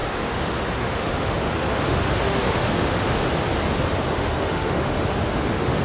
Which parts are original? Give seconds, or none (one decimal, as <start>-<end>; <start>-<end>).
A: 3.2-4.1